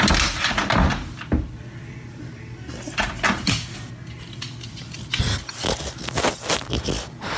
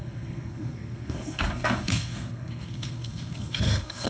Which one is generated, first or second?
second